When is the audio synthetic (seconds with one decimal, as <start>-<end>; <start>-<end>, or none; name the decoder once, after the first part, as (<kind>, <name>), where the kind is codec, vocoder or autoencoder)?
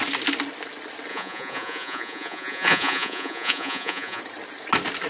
1.1-4.2 (vocoder, Vocos)